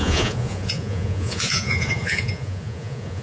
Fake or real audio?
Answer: fake